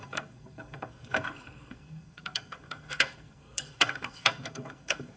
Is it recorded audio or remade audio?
remade